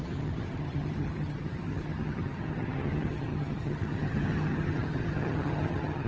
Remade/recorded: remade